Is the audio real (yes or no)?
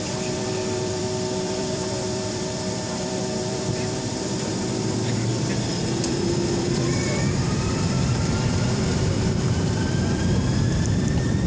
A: no